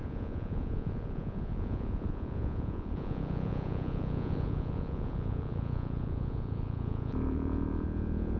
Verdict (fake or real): fake